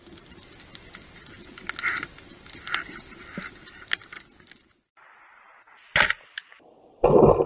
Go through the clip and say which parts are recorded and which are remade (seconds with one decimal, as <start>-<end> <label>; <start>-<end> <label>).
0.0-7.5 recorded